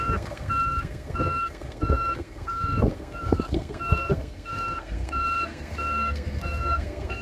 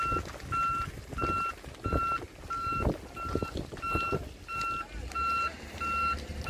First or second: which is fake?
first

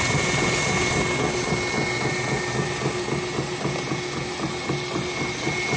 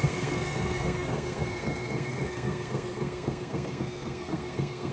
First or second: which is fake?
second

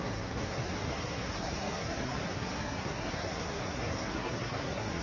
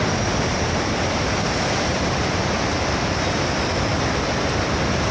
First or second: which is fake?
first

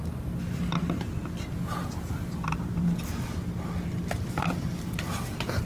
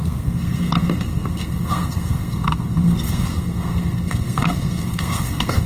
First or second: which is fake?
second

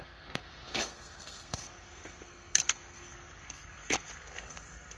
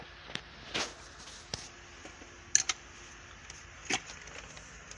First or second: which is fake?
first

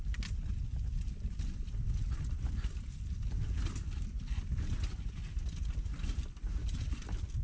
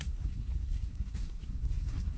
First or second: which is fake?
second